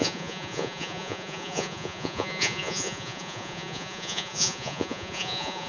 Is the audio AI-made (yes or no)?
yes